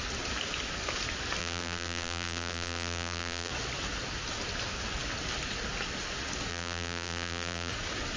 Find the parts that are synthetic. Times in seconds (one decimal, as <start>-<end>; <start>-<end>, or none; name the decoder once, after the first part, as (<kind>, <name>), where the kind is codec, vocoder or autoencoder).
1.4-3.5 (vocoder, BigVGAN v2); 6.5-7.7